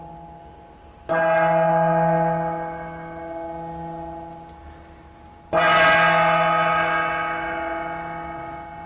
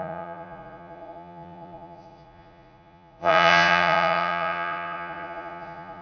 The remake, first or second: second